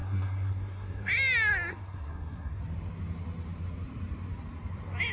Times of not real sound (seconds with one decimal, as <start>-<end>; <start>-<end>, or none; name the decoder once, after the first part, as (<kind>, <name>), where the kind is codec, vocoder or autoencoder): 0.0-1.1 (codec, SNAC); 1.7-2.6